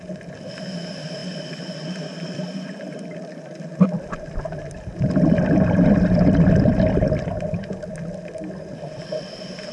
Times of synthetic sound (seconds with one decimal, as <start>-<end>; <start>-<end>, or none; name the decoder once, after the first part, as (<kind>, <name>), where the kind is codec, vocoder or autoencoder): 0.0-9.7 (vocoder, BigVGAN v2)